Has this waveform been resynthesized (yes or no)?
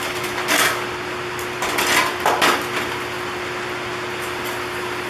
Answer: no